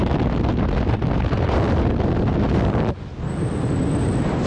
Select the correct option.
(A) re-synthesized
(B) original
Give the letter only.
B